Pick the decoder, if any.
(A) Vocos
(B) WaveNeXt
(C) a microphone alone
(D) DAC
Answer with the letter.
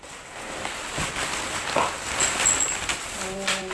C